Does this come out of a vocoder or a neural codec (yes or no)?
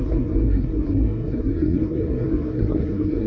yes